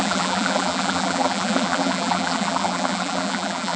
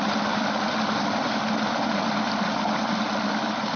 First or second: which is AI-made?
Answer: first